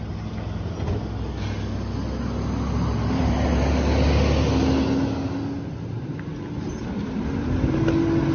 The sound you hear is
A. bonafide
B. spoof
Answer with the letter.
A